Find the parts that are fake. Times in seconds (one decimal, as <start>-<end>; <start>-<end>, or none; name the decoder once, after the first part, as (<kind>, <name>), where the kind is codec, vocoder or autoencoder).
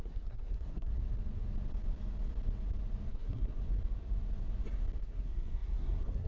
0.0-0.9 (codec, SNAC); 3.1-3.6; 5.0-6.3